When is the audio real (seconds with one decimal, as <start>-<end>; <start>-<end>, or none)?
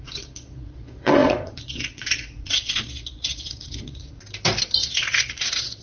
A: 4.1-4.8